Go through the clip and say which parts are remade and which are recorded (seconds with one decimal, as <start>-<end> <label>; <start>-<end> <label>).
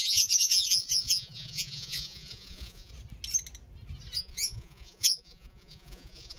0.0-2.9 remade; 2.9-4.2 recorded; 4.2-6.4 remade